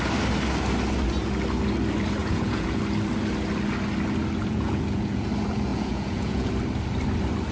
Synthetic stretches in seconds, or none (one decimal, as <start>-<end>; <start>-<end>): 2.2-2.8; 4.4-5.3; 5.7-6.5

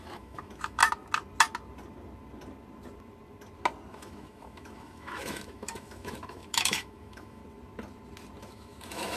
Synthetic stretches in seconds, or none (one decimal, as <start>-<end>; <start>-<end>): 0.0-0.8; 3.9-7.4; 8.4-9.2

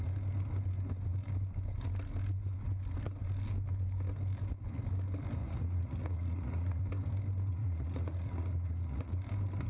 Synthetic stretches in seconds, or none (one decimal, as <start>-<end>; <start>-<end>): 5.4-6.8; 7.5-9.2

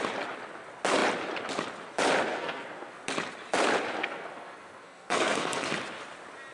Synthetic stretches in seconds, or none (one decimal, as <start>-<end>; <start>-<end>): 2.3-3.0; 4.0-5.7

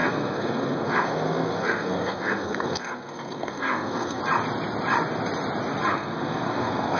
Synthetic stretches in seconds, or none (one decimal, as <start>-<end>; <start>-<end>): 0.0-4.2; 5.9-7.0

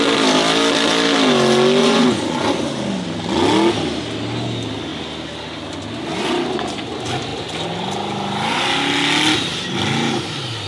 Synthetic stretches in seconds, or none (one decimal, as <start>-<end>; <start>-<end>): 1.8-2.5